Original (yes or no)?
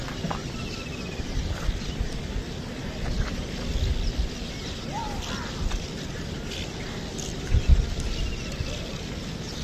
yes